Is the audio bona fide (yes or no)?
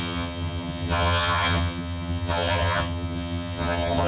no